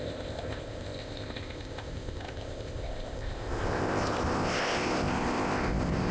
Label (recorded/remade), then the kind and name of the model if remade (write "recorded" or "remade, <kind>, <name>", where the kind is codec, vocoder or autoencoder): remade, codec, ZipCodec